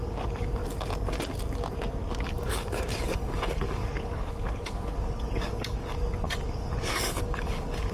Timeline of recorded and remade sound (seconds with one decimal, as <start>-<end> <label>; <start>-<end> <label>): 0.0-0.6 remade; 0.6-2.2 recorded; 2.2-7.9 remade